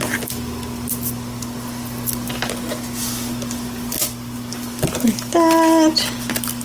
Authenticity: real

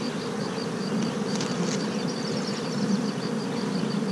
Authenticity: real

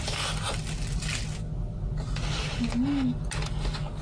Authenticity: real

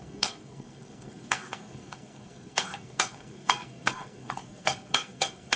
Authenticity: fake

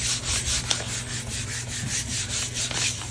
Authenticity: real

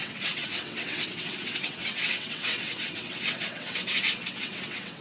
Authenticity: fake